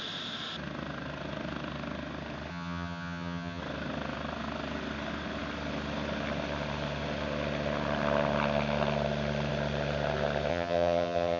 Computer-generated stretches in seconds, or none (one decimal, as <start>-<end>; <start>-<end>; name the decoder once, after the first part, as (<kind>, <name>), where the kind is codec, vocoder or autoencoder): 2.5-3.6 (vocoder, HiFi-GAN); 10.5-11.4